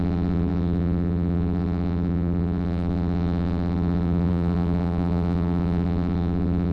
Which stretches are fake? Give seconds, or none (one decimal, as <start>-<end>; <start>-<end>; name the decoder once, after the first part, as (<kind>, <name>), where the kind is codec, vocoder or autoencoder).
0.0-6.7 (vocoder, BigVGAN v2)